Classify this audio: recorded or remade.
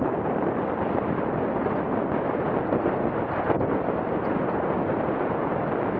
recorded